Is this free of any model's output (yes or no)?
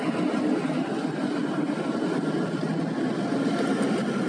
yes